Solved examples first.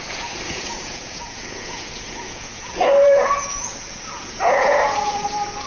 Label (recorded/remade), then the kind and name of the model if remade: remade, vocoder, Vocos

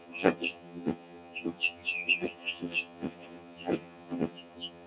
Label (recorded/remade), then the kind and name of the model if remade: remade, vocoder, HiFi-GAN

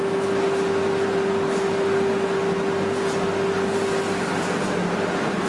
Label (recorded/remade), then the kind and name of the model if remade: recorded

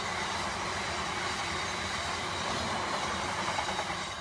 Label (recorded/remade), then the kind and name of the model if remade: recorded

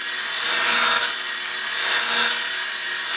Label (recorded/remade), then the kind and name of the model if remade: recorded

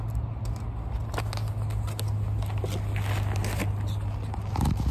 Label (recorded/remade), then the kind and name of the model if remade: recorded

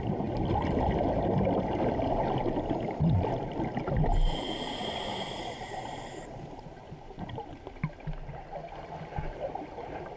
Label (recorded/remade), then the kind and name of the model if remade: recorded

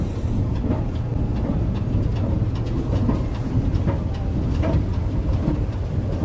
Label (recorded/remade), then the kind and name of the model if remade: recorded